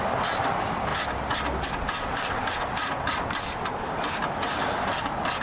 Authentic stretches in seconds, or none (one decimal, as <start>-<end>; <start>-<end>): 0.0-5.4